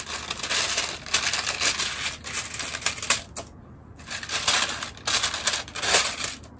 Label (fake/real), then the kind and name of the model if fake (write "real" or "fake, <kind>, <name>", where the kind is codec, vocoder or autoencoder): real